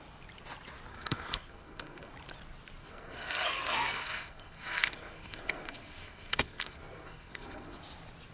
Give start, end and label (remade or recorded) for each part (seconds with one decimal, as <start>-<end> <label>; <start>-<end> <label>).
0.0-0.9 recorded; 0.9-2.1 remade; 2.1-2.8 recorded; 2.8-7.8 remade; 7.8-8.3 recorded